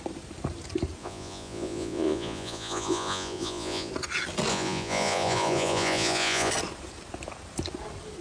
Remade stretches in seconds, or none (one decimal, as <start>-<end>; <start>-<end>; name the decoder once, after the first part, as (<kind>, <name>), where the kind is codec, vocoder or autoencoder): 1.0-3.9 (vocoder, Vocos); 4.5-6.5